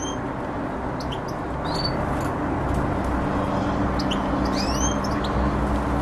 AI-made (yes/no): no